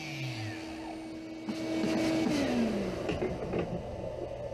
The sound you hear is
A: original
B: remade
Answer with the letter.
A